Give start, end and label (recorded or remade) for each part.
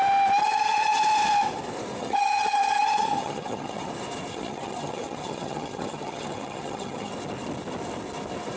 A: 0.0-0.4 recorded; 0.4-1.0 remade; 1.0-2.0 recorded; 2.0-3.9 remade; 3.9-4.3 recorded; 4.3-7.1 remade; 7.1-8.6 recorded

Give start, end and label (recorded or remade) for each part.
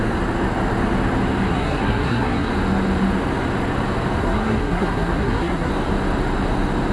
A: 0.0-1.5 recorded; 1.5-2.5 remade; 2.5-4.2 recorded; 4.2-5.7 remade; 5.7-6.9 recorded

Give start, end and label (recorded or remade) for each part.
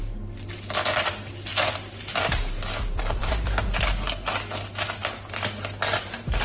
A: 0.0-6.4 recorded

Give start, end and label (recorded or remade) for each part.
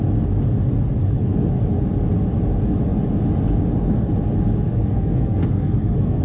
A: 0.0-1.0 recorded; 1.0-1.6 remade; 1.6-4.7 recorded; 4.7-6.2 remade